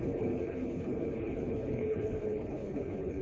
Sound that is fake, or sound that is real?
fake